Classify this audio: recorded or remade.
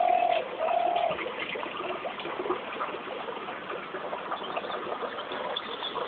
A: recorded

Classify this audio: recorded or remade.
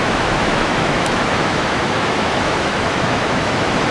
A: remade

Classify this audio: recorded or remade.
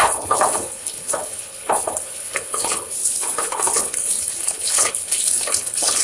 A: remade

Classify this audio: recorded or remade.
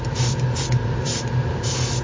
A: recorded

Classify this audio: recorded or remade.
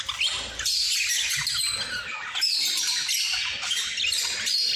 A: recorded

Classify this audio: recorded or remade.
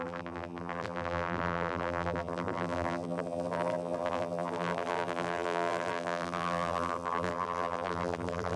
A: remade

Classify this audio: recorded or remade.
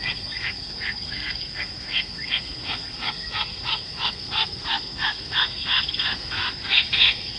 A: remade